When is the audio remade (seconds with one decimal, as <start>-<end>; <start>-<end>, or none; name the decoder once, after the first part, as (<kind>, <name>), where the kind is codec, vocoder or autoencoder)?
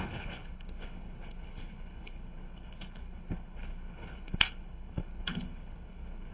0.0-6.3 (codec, HILCodec)